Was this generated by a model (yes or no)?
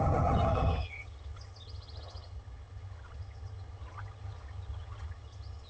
yes